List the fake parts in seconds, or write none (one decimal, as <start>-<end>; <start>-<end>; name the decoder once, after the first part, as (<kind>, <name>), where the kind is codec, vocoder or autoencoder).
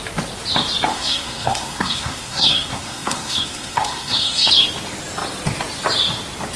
0.9-4.5 (codec, SNAC)